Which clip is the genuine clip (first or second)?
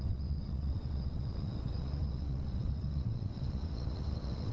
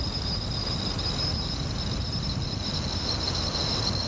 second